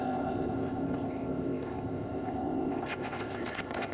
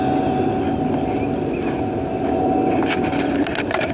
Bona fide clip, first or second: second